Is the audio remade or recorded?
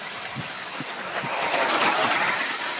recorded